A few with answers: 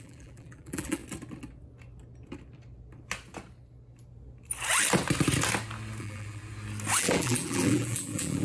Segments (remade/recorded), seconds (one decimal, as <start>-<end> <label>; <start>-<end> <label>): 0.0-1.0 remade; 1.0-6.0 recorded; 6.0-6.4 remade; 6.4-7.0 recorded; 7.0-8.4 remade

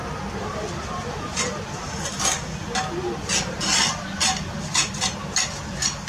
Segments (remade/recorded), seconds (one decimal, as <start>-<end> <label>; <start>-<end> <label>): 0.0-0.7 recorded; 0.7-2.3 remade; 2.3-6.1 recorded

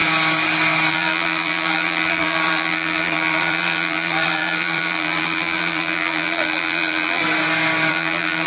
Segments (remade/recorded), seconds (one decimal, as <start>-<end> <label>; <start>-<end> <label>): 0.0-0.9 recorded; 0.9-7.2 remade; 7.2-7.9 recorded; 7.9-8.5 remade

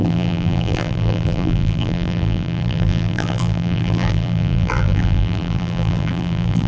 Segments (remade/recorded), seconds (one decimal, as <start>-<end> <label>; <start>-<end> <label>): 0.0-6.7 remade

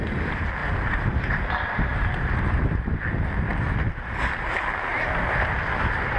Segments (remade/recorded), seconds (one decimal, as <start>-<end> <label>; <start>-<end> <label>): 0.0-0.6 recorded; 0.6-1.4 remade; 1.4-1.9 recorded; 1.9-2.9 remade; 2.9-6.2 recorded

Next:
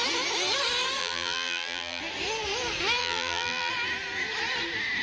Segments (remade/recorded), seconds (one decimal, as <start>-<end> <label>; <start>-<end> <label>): 0.0-1.0 recorded; 1.0-2.0 remade; 2.0-3.0 recorded; 3.0-3.7 remade; 3.7-5.0 recorded

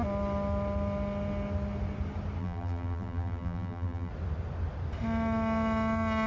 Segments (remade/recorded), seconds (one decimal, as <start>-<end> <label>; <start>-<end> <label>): 0.0-2.4 recorded; 2.4-4.1 remade; 4.1-6.3 recorded